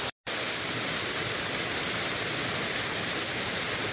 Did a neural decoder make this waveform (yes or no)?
no